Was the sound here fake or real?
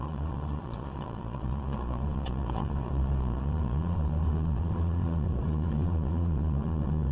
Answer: fake